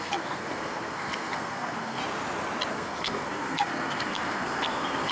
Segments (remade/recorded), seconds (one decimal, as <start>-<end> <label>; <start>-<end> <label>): 0.0-2.0 remade; 2.0-2.7 recorded; 2.7-5.1 remade